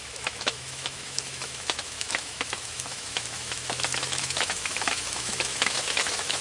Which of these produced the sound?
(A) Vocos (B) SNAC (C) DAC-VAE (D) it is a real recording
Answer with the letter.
C